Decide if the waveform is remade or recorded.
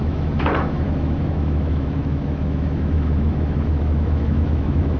remade